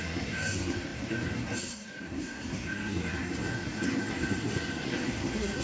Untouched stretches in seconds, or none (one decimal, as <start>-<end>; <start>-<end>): none